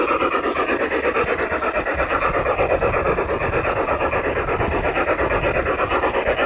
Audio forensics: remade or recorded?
recorded